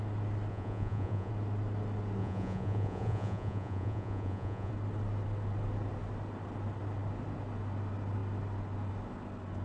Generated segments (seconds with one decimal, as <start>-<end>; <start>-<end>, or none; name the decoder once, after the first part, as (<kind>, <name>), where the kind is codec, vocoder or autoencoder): 0.5-1.3 (vocoder, Vocos); 2.2-4.7